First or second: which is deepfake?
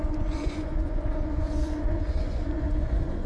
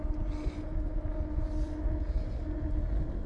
first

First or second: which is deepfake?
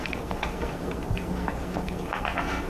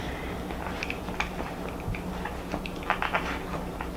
first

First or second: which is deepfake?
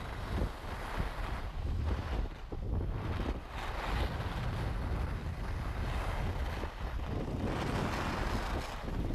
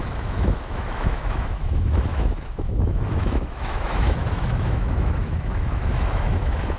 second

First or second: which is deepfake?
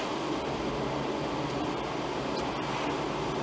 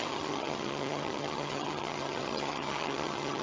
second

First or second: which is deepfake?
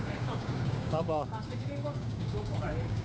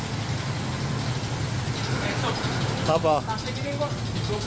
first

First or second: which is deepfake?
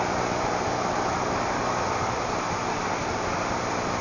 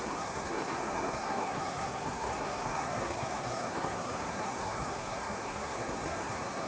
second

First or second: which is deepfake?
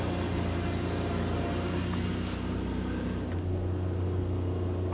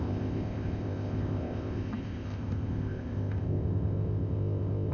second